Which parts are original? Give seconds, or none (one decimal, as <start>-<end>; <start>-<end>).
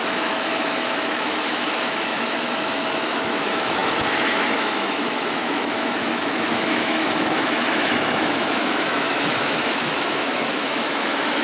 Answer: none